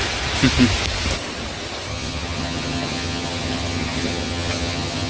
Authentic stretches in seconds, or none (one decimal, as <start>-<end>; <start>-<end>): 0.0-1.9